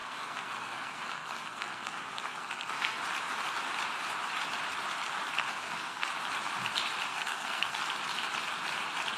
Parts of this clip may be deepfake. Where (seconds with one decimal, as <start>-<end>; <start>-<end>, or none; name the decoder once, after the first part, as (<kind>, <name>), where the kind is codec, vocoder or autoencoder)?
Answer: 0.0-3.0 (codec, SNAC); 5.4-6.1; 7.1-7.8